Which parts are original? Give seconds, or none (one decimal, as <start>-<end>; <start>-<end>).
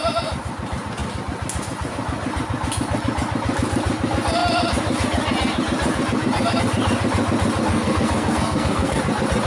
0.0-7.7; 9.0-9.5